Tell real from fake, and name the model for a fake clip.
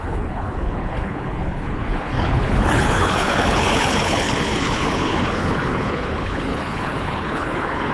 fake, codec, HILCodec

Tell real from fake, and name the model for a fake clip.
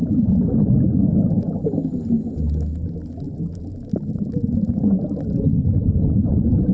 real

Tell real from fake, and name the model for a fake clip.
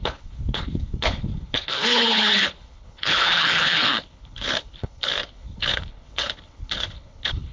fake, codec, HILCodec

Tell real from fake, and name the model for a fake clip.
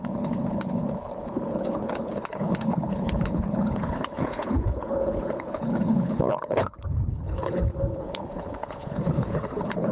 fake, codec, HILCodec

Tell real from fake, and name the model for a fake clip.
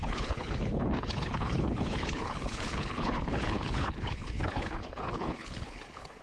fake, codec, HILCodec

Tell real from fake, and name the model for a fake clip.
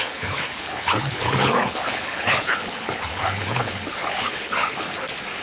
fake, codec, HILCodec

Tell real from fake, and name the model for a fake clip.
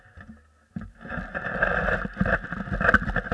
real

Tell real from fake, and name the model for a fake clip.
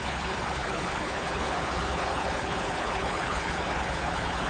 fake, codec, HILCodec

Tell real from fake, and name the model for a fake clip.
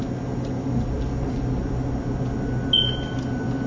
real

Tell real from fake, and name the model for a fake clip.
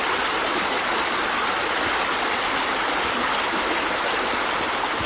real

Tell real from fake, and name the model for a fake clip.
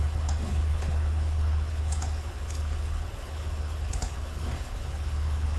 fake, codec, HILCodec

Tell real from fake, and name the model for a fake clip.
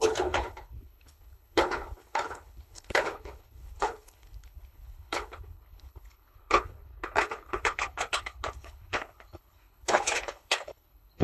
fake, codec, HILCodec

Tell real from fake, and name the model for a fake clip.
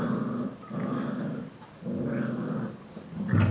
real